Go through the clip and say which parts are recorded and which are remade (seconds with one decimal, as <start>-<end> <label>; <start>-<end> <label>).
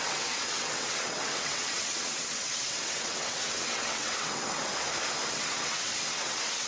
0.0-4.7 remade; 4.7-5.3 recorded; 5.3-6.7 remade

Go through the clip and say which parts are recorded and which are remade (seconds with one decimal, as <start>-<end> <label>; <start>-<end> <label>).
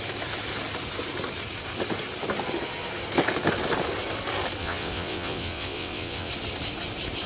0.0-4.6 recorded; 4.6-6.3 remade; 6.3-7.3 recorded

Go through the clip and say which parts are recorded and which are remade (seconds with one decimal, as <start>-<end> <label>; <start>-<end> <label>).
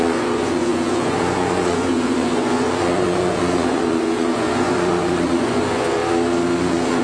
0.0-6.0 remade; 6.0-6.6 recorded; 6.6-7.0 remade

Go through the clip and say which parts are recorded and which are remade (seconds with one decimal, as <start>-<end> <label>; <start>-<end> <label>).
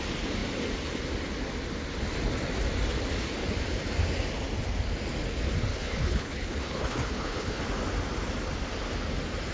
0.0-5.7 recorded; 5.7-7.6 remade; 7.6-9.5 recorded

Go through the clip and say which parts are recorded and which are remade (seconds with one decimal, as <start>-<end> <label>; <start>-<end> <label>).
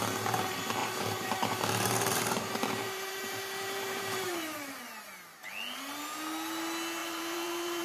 0.0-0.8 recorded; 0.8-4.8 remade; 4.8-7.0 recorded; 7.0-7.8 remade